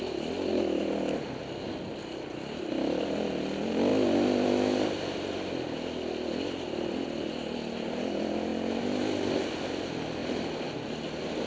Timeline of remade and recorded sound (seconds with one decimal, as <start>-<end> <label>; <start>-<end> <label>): 0.0-11.5 recorded